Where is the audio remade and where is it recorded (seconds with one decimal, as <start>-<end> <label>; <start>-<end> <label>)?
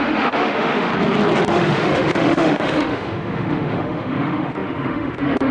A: 0.0-0.9 remade; 0.9-1.5 recorded; 1.5-5.5 remade